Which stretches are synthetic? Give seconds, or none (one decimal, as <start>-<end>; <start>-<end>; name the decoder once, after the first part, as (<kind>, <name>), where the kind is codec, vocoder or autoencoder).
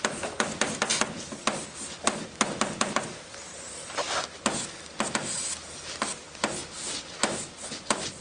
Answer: none